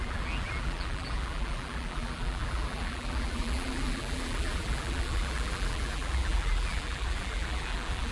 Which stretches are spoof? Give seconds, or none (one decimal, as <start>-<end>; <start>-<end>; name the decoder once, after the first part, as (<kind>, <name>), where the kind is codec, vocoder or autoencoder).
0.0-8.1 (vocoder, BigVGAN v2)